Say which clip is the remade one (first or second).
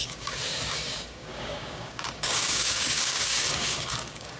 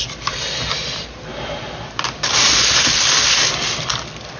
first